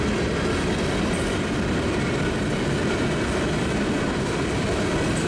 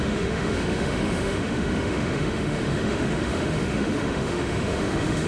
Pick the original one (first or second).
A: first